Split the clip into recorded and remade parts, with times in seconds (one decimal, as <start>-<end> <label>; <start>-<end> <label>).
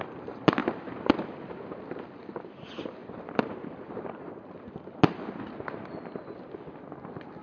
0.0-0.6 recorded; 0.6-1.8 remade; 1.8-3.0 recorded; 3.0-5.0 remade; 5.0-7.4 recorded